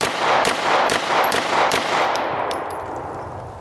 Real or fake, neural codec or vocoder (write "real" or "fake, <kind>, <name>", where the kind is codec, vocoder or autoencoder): fake, vocoder, BigVGAN v2